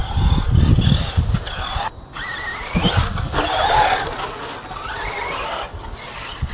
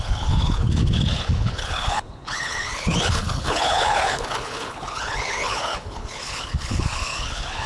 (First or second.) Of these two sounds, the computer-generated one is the second